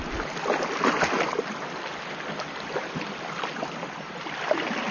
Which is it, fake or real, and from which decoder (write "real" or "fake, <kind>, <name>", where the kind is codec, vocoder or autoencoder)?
real